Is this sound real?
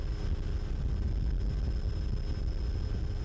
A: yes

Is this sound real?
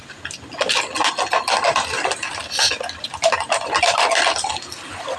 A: yes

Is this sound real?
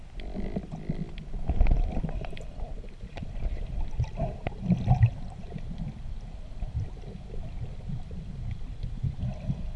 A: yes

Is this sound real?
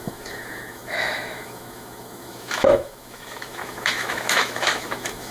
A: no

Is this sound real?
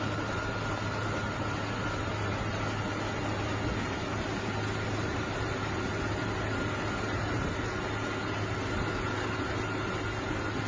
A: yes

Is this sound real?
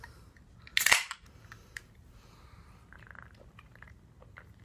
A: yes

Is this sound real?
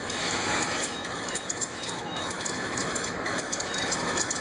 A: no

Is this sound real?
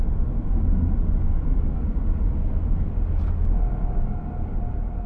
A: yes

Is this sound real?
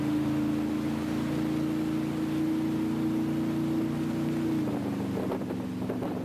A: yes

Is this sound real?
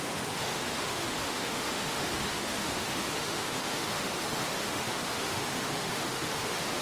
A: no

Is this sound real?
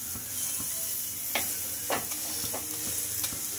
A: yes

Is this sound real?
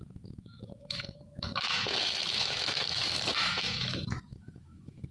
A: no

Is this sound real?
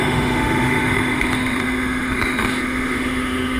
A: no